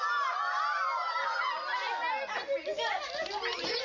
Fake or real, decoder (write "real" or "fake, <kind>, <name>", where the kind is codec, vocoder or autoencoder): real